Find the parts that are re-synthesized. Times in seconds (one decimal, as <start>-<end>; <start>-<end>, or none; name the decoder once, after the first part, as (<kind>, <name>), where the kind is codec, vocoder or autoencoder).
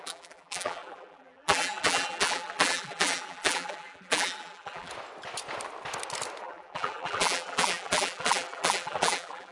0.0-4.9 (vocoder, BigVGAN v2); 6.4-9.5